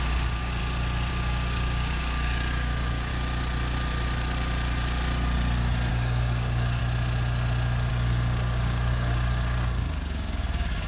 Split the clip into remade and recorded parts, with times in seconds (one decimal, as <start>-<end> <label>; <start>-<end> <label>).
0.0-0.6 remade; 0.6-1.1 recorded; 1.1-3.1 remade; 3.1-5.9 recorded; 5.9-6.8 remade; 6.8-7.9 recorded; 7.9-10.9 remade